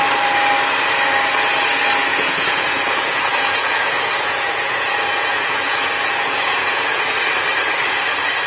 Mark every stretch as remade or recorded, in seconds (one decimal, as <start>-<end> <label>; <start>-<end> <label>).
0.0-2.1 recorded; 2.1-7.1 remade; 7.1-8.5 recorded